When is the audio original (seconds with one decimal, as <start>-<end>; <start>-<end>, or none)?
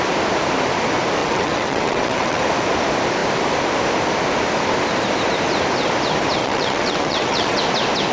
0.0-1.2; 2.4-6.4; 7.6-8.1